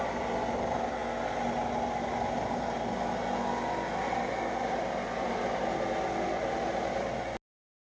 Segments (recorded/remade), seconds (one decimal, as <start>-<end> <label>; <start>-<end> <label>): 0.0-7.8 recorded